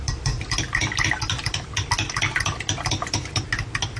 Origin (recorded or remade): recorded